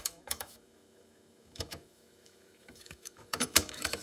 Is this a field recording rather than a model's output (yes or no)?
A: no